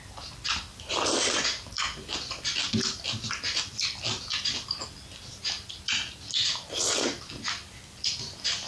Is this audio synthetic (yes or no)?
no